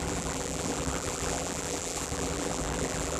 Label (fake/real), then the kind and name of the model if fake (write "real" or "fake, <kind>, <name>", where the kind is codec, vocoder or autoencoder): fake, vocoder, BigVGAN v2